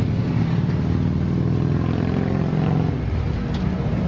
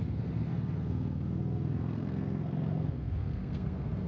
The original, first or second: first